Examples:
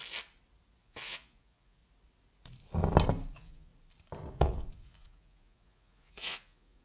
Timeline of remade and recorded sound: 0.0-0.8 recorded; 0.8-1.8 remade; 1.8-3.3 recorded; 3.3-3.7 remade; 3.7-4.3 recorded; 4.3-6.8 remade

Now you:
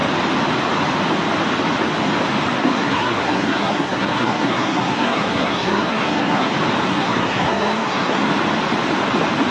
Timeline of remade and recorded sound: 0.0-2.6 recorded; 2.6-6.5 remade; 6.5-6.9 recorded; 6.9-8.3 remade; 8.3-9.5 recorded

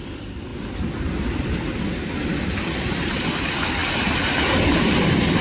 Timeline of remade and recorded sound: 0.0-5.4 recorded

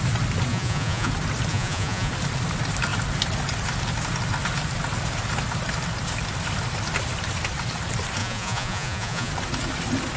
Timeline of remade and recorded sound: 0.0-0.5 recorded; 0.5-1.1 remade; 1.1-1.5 recorded; 1.5-2.1 remade; 2.1-8.2 recorded; 8.2-9.3 remade; 9.3-10.2 recorded

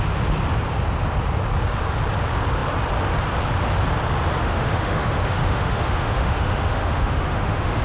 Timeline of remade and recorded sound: 0.0-4.4 recorded; 4.4-7.8 remade

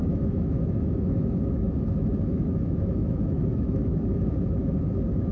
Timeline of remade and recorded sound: 0.0-5.3 remade

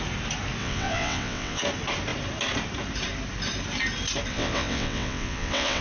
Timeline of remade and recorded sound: 0.0-0.6 recorded; 0.6-1.6 remade; 1.6-4.3 recorded; 4.3-5.8 remade

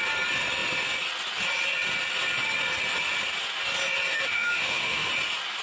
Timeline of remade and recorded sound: 0.0-4.1 recorded; 4.1-5.1 remade; 5.1-5.6 recorded